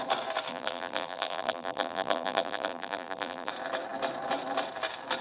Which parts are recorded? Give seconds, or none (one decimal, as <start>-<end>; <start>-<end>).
0.0-0.5; 3.5-5.2